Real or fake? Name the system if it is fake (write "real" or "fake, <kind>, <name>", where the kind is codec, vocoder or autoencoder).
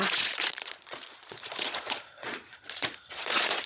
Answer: fake, vocoder, Vocos